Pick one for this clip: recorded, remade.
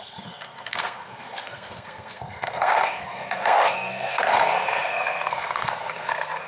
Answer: remade